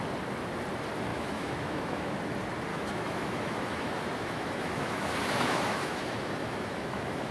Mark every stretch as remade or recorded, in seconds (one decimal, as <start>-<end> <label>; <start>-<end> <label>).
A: 0.0-1.1 recorded; 1.1-2.2 remade; 2.2-2.7 recorded; 2.7-7.3 remade